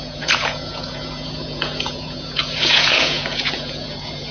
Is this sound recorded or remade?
remade